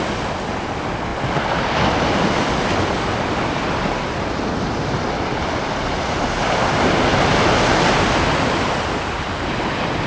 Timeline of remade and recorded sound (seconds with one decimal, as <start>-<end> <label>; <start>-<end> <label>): 0.0-10.1 recorded